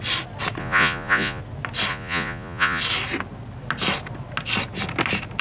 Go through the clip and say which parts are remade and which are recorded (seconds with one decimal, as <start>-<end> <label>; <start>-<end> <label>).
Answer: 0.0-0.6 recorded; 0.6-1.4 remade; 1.4-1.9 recorded; 1.9-2.8 remade; 2.8-5.4 recorded